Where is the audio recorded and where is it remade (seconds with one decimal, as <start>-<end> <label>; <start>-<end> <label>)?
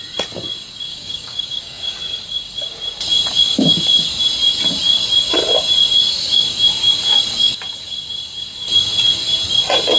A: 0.0-0.9 recorded; 0.9-2.0 remade; 2.0-10.0 recorded